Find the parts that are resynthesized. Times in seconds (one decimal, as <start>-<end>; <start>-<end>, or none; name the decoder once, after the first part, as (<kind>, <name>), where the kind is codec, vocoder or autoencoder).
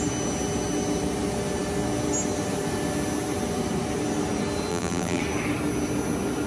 4.7-5.2 (vocoder, BigVGAN v2)